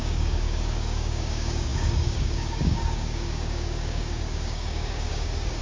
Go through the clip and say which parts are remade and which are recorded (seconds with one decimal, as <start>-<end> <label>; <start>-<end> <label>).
0.0-5.6 remade